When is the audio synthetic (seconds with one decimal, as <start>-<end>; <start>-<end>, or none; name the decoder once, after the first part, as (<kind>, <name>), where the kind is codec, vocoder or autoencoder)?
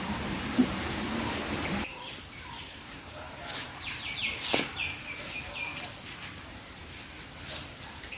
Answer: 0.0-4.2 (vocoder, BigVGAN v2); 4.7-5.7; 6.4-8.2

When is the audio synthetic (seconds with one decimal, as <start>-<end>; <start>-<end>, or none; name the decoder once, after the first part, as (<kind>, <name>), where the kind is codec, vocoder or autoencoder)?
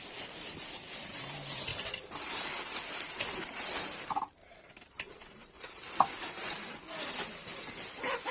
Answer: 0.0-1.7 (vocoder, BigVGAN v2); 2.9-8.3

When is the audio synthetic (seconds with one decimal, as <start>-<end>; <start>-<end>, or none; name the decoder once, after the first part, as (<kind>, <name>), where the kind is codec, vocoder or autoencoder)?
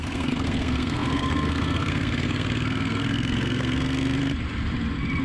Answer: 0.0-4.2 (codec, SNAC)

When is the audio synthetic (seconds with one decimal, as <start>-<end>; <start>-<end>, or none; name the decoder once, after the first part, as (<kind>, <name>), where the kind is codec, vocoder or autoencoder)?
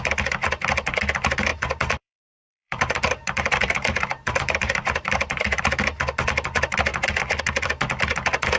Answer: 1.5-5.6 (vocoder, BigVGAN v2)